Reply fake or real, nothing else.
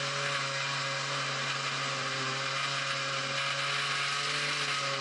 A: real